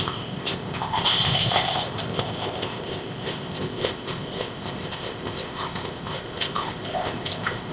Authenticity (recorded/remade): remade